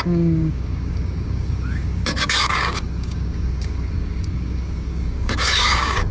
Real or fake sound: fake